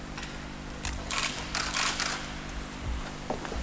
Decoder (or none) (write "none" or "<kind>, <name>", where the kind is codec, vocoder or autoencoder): vocoder, BigVGAN v2